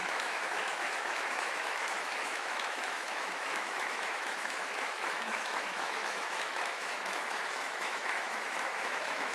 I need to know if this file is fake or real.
fake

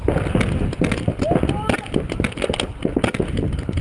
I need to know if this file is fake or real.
real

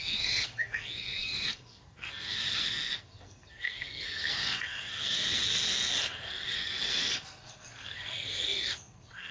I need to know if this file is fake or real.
fake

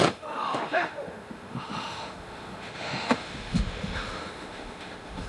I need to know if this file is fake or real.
fake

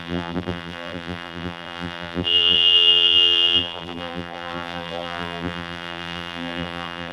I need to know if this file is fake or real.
fake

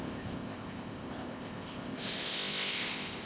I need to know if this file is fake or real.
fake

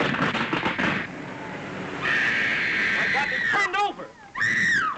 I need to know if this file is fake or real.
real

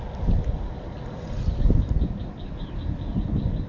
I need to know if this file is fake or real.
real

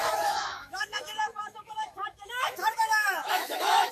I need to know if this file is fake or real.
fake